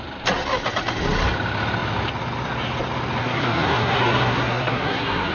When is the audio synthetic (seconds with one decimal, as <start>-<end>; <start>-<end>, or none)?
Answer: 3.2-5.3